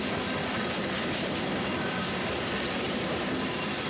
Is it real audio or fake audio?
real